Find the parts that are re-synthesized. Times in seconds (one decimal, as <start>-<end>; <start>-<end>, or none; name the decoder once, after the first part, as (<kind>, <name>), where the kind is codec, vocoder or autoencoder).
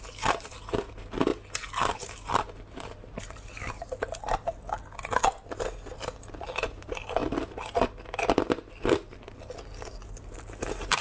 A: none